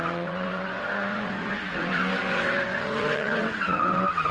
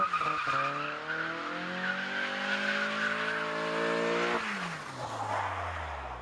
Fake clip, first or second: first